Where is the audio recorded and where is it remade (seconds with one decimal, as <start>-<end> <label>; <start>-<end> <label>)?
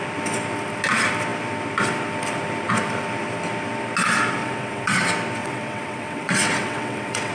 0.0-4.4 recorded; 4.4-5.0 remade; 5.0-5.4 recorded; 5.4-7.3 remade